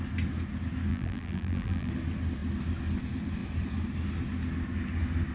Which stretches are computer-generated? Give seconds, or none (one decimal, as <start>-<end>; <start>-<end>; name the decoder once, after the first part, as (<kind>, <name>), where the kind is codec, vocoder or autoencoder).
0.9-1.9 (vocoder, BigVGAN v2)